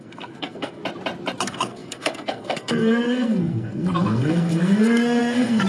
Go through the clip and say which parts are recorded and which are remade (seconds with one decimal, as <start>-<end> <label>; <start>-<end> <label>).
0.0-0.8 remade; 0.8-1.4 recorded; 1.4-5.7 remade